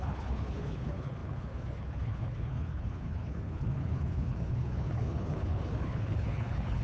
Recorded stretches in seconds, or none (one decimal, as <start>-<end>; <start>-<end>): none